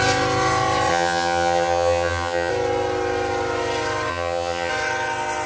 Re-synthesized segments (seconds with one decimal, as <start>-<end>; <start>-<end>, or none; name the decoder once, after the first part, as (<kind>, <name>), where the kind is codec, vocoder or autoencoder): 0.9-2.5 (vocoder, HiFi-GAN); 4.1-4.7

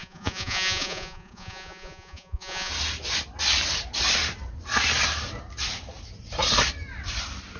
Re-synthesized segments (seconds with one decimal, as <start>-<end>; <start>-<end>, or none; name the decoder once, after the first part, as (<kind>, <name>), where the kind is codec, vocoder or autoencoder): 0.0-2.7 (vocoder, Vocos)

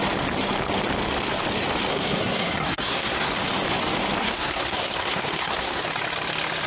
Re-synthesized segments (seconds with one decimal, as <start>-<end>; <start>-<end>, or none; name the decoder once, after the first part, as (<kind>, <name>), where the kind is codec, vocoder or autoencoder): 1.9-3.3 (codec, SNAC); 4.2-5.8